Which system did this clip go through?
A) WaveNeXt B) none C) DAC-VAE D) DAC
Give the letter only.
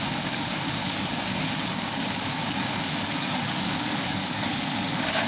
D